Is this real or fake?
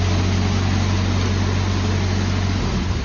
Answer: real